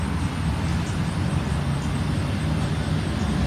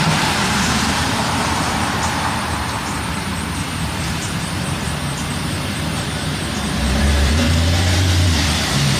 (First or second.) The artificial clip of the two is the second